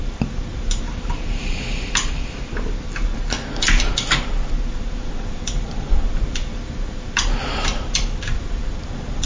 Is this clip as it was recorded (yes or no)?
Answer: no